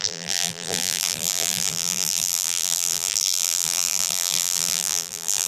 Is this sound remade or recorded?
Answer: remade